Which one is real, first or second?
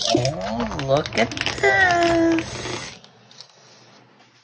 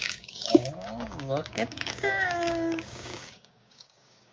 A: first